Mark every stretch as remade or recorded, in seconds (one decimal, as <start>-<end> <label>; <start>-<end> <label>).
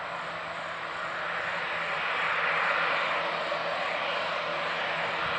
0.0-5.4 recorded